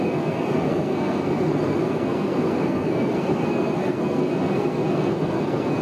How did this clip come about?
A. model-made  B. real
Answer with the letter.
A